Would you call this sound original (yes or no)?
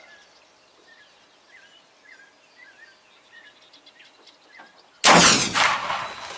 yes